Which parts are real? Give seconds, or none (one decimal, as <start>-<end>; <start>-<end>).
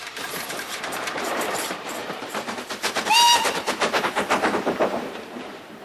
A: none